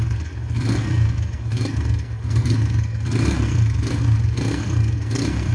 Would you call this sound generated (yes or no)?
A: yes